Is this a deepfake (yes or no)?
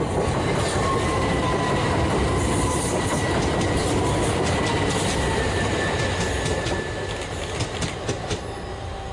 no